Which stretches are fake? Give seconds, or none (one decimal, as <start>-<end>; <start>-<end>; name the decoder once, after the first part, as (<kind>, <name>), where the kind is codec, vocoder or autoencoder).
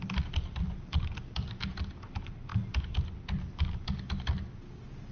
none